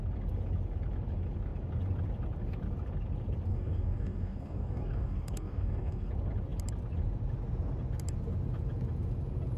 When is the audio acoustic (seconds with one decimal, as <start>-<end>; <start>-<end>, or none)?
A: 0.0-3.5; 6.1-9.6